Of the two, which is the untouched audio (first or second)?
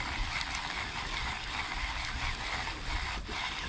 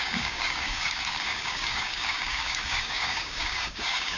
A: first